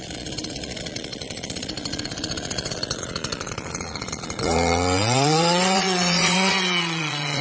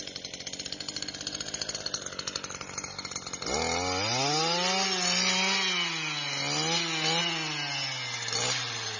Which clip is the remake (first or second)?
first